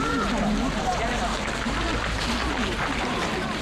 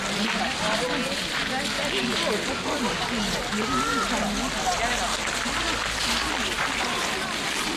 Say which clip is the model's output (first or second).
first